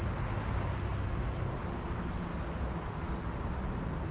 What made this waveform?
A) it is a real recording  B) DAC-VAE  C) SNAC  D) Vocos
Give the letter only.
A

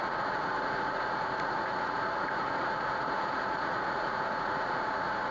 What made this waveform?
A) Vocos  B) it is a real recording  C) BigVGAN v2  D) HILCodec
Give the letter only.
A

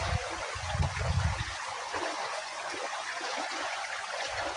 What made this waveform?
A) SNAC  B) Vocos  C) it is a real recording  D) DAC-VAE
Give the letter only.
B